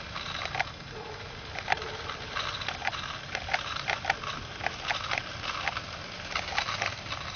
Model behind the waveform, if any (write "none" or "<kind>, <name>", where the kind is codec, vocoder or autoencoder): none